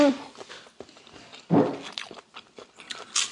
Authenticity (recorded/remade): recorded